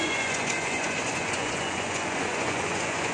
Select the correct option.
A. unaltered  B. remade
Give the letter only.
B